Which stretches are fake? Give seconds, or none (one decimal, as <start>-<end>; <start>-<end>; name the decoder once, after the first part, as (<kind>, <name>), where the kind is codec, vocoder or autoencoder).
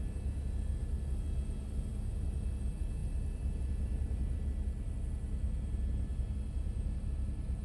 none